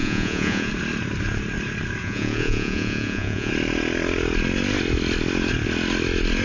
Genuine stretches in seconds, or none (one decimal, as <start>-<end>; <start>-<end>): 0.7-2.0; 3.5-6.4